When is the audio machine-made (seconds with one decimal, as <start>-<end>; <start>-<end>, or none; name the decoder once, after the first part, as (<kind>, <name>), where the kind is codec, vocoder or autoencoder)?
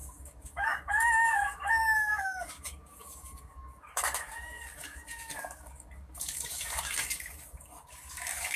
0.0-8.6 (codec, DAC)